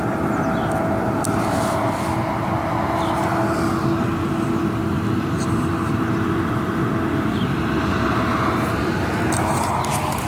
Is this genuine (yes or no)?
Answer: yes